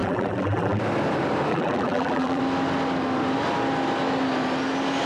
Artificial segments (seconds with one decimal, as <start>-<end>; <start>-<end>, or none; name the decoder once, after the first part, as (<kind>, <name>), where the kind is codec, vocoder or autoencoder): 0.0-0.8 (vocoder, BigVGAN v2); 1.5-2.4